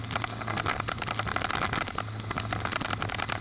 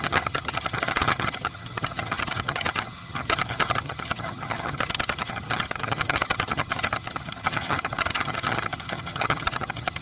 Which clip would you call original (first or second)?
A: first